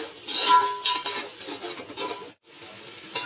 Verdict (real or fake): real